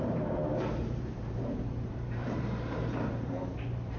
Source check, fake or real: fake